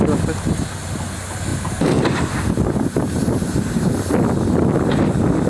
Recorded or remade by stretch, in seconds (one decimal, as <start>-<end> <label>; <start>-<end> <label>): 0.0-1.5 recorded; 1.5-4.1 remade; 4.1-5.5 recorded